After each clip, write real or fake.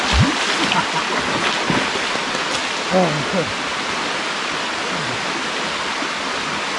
real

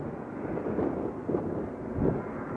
real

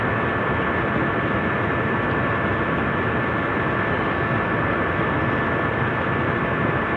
real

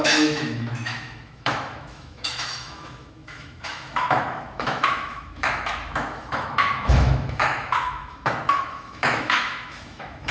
fake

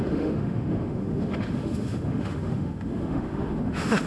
fake